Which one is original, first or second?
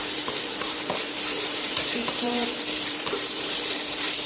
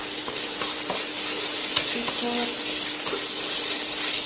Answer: second